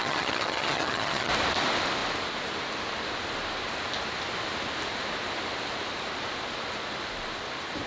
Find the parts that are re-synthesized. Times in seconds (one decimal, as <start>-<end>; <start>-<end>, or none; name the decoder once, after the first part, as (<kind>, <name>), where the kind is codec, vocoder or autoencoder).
0.0-1.3 (vocoder, HiFi-GAN)